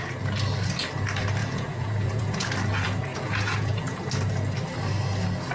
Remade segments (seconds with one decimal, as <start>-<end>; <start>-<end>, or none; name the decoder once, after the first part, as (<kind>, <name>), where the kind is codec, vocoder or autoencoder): 1.4-2.5 (vocoder, Vocos); 3.1-4.1